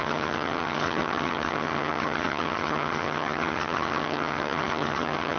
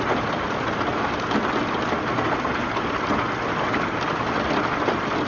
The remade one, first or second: first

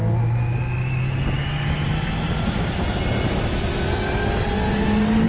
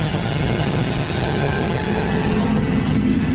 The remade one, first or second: second